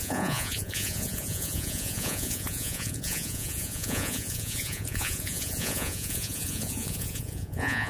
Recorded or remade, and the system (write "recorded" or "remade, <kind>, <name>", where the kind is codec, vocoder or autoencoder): remade, vocoder, Vocos